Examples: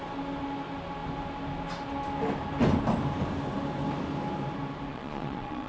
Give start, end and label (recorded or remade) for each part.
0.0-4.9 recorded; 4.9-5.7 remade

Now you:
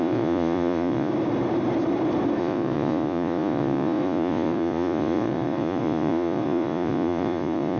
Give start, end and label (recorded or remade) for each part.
0.0-1.1 remade; 1.1-2.4 recorded; 2.4-7.8 remade